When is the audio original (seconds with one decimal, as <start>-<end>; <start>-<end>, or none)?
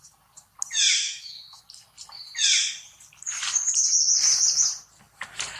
0.0-1.0; 1.6-5.6